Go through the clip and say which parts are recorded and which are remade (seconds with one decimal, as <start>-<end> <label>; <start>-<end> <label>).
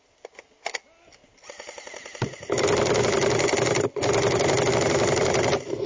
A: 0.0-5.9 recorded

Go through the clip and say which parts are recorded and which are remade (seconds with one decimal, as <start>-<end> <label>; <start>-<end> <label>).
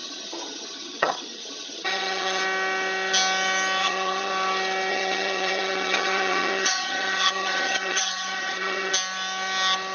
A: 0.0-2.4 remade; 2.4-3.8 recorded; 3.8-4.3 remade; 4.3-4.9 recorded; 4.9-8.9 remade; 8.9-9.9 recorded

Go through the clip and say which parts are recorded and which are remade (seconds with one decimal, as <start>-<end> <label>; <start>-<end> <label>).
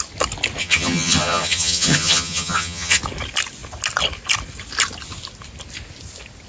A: 0.0-0.6 recorded; 0.6-3.0 remade; 3.0-6.5 recorded